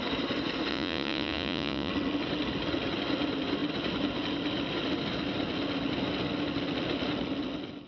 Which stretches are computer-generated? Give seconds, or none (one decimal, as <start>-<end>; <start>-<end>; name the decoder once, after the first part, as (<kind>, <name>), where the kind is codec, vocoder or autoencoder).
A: 0.7-1.9 (vocoder, Vocos)